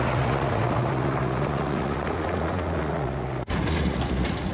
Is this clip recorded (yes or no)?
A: no